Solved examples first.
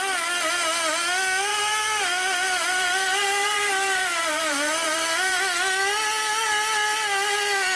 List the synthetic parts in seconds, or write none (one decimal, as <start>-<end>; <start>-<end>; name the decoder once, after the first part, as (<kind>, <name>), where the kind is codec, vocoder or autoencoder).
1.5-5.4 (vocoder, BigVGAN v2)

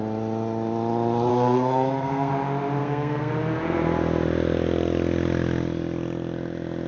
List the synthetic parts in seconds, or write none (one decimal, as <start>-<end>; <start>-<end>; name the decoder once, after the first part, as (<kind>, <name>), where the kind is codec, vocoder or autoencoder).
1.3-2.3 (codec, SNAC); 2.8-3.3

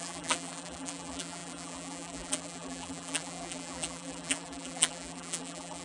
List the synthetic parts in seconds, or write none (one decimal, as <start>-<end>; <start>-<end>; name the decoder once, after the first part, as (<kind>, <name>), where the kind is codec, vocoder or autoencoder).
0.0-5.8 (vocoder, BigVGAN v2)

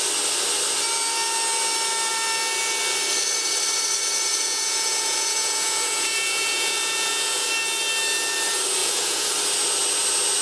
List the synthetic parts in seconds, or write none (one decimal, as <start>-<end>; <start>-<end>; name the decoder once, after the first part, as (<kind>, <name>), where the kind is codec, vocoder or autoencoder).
4.3-7.5 (vocoder, Vocos); 8.8-9.3

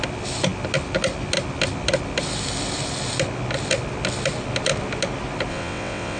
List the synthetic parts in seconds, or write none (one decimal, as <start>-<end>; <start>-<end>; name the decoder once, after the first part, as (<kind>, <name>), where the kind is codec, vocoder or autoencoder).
5.5-6.2 (vocoder, WaveNeXt)

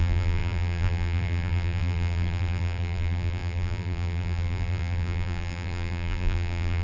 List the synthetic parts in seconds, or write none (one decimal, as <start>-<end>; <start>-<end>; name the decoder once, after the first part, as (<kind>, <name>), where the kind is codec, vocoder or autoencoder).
0.0-6.8 (vocoder, BigVGAN v2)